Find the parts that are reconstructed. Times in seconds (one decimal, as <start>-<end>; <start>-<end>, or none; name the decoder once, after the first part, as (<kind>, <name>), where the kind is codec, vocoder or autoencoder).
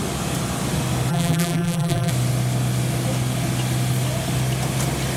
1.1-2.1 (vocoder, BigVGAN v2)